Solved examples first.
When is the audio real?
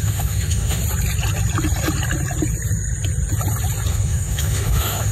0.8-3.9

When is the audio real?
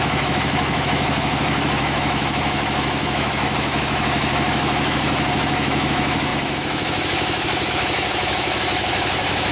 none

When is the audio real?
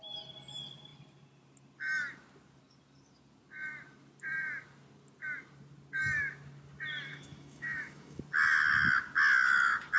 0.0-7.1; 8.2-10.0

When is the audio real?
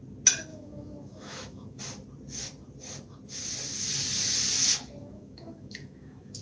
0.0-0.5; 1.8-5.0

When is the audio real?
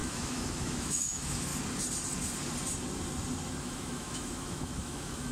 1.5-3.6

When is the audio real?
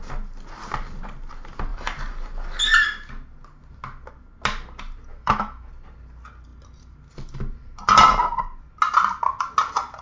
0.0-5.1; 5.7-10.0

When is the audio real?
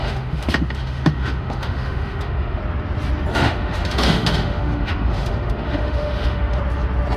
2.6-3.3; 6.6-7.2